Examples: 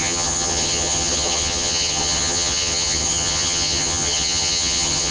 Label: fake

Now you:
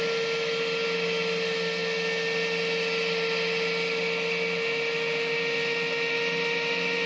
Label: real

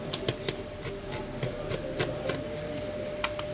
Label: real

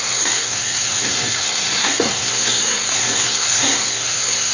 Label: fake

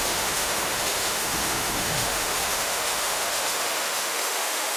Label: fake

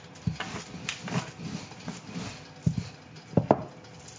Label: real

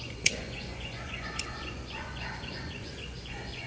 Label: fake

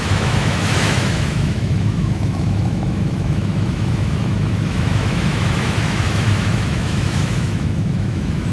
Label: fake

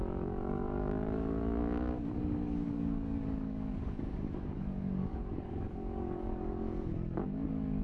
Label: fake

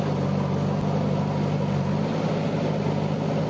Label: real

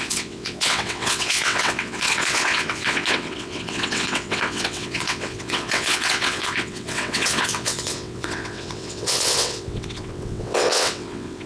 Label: fake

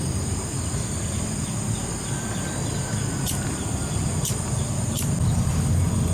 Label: real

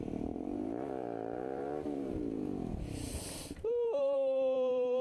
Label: fake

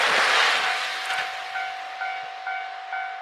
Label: real